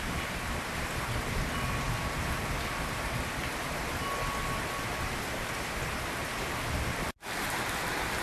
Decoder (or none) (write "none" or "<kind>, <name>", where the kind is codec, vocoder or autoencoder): none